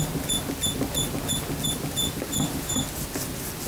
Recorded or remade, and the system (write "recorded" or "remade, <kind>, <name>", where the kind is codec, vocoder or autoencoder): recorded